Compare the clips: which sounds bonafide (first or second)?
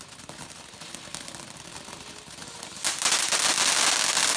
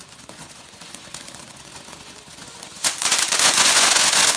first